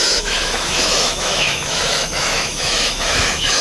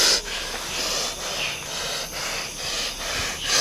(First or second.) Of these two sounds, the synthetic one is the first